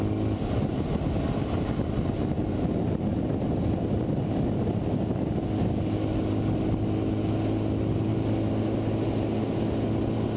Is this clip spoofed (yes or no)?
no